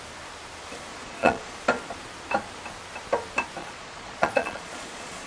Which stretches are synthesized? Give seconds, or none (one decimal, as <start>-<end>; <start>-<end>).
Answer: 0.9-1.5; 3.6-5.3